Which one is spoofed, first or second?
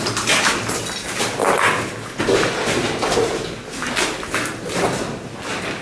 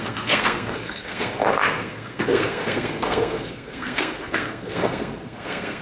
second